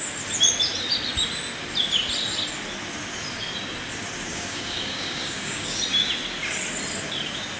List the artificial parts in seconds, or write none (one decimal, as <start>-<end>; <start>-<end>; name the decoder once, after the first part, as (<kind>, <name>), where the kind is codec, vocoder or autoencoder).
4.3-5.8 (codec, DAC)